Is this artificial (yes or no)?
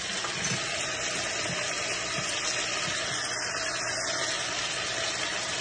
no